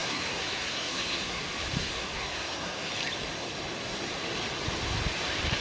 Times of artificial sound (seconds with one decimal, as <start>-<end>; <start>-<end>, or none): 0.0-1.4; 1.8-2.9